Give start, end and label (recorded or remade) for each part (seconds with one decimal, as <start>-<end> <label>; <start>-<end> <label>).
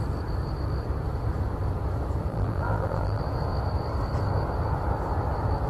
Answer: 0.0-2.3 recorded; 2.3-3.2 remade; 3.2-5.7 recorded